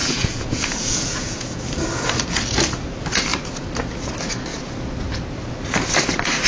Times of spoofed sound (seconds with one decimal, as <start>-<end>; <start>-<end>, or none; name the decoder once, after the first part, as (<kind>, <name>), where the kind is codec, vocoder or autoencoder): 0.0-1.6 (vocoder, Vocos)